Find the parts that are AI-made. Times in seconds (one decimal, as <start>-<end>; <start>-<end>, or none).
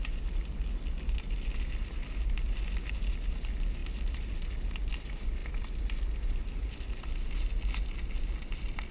none